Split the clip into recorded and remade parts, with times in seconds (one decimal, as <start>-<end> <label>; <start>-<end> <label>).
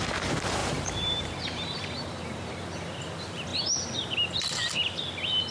0.0-0.6 recorded; 0.6-2.5 remade; 2.5-5.5 recorded